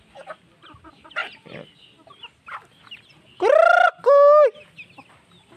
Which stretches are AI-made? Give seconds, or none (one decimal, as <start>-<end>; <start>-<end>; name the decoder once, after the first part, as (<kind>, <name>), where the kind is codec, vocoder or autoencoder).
none